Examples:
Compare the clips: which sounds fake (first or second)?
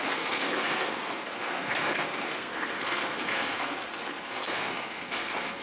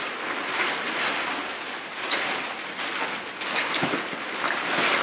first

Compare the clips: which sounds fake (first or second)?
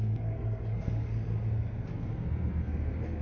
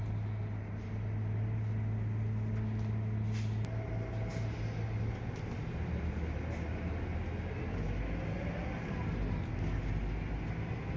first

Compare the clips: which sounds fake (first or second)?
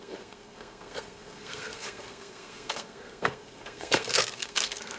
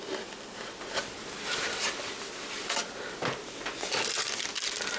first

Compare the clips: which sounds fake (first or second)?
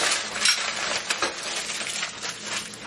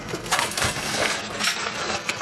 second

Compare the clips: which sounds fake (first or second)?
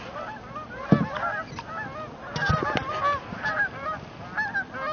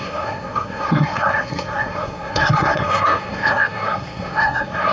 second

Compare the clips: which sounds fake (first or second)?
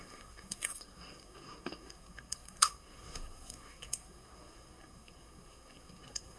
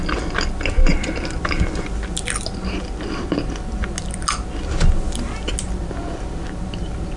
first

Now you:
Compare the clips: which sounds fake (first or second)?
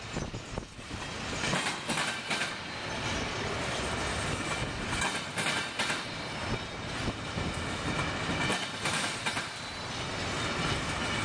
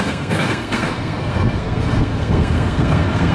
second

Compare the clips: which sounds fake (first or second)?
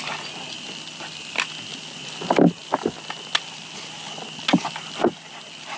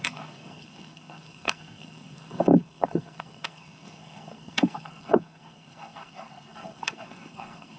second